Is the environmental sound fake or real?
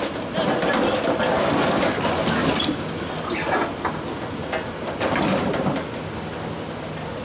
real